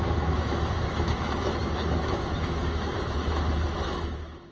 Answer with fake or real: fake